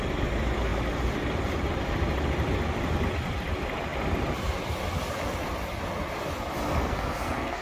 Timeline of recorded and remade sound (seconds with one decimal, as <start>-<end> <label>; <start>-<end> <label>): 0.0-6.8 recorded; 6.8-7.6 remade